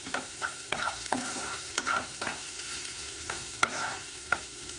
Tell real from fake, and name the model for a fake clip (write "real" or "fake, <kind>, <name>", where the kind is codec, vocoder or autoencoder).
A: fake, codec, SNAC